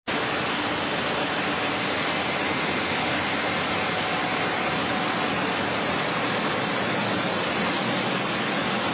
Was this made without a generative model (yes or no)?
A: yes